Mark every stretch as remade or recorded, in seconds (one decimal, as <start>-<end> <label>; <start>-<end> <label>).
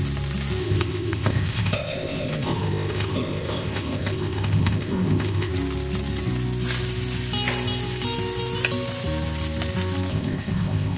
0.0-0.6 recorded; 0.6-5.5 remade; 5.5-10.1 recorded; 10.1-11.0 remade